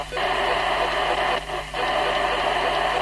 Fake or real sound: real